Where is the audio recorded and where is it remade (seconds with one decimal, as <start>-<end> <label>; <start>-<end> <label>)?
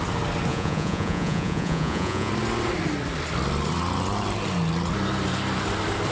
0.0-0.5 recorded; 0.5-2.3 remade; 2.3-6.1 recorded